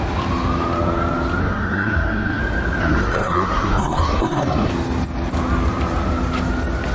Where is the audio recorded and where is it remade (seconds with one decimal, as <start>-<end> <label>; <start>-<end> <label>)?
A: 0.0-1.4 recorded; 1.4-2.4 remade; 2.4-2.8 recorded; 2.8-4.7 remade; 4.7-6.9 recorded